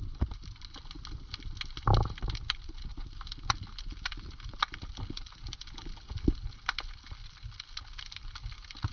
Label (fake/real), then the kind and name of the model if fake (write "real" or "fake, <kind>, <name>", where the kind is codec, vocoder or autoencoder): real